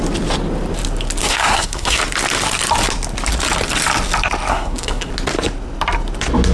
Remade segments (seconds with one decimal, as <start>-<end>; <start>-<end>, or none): 1.2-2.0; 4.5-5.1